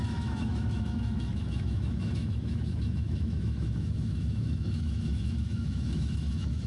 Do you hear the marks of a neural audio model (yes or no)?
yes